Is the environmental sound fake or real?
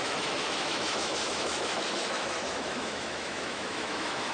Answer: fake